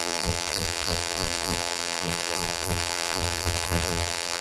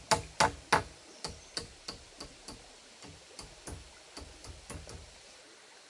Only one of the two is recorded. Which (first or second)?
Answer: second